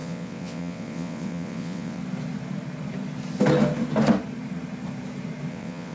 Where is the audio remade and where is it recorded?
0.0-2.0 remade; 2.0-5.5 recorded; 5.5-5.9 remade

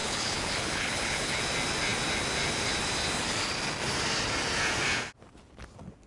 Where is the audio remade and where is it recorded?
0.0-1.4 remade; 1.4-6.1 recorded

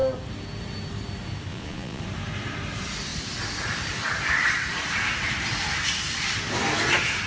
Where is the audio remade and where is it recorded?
0.0-1.5 recorded; 1.5-2.0 remade; 2.0-7.3 recorded

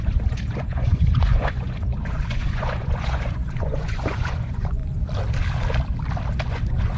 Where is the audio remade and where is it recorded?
0.0-4.8 remade; 4.8-6.5 recorded; 6.5-7.0 remade

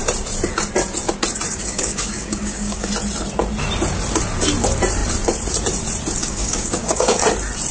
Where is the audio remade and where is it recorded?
0.0-1.5 recorded; 1.5-2.9 remade; 2.9-6.2 recorded; 6.2-7.2 remade; 7.2-7.7 recorded

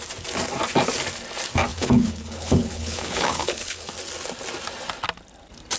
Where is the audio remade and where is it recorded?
0.0-1.7 recorded; 1.7-3.9 remade; 3.9-5.8 recorded

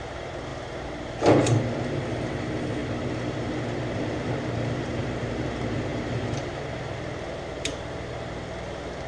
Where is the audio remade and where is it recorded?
0.0-9.1 remade

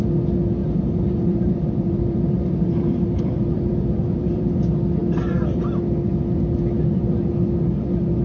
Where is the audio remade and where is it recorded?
0.0-0.6 recorded; 0.6-4.5 remade; 4.5-8.2 recorded